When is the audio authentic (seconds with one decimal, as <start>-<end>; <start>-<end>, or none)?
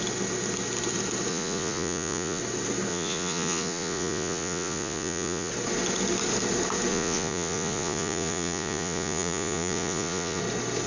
0.0-1.3; 2.4-2.9; 5.5-6.9; 10.4-10.9